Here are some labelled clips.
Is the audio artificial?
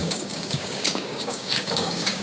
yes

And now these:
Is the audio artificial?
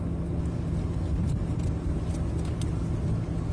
no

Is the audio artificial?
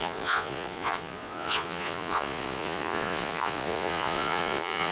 yes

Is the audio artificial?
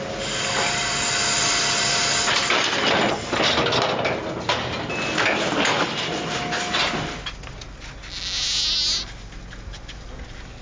no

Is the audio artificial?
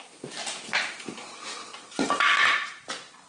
no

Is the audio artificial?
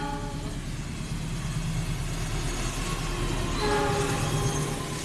no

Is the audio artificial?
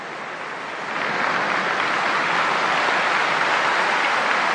no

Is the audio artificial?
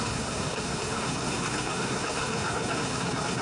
yes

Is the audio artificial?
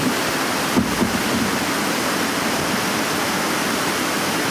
no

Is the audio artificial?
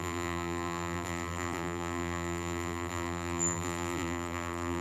yes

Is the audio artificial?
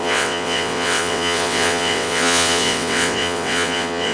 yes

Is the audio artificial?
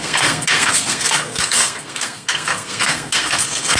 yes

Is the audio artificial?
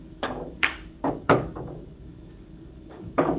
yes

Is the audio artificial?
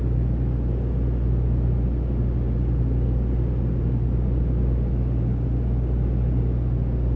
no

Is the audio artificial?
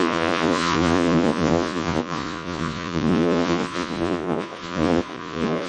yes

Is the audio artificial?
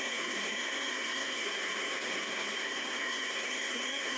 yes